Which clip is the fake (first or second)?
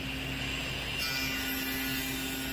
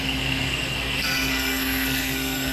second